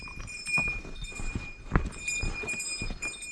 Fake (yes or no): yes